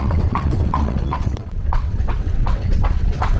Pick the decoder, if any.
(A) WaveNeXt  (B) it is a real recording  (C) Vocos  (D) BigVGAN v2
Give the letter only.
A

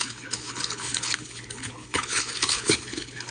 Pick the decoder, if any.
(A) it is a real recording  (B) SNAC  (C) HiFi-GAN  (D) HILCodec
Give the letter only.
D